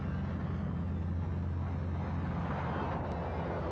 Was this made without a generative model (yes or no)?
yes